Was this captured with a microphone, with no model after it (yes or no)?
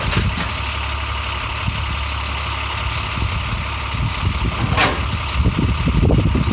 yes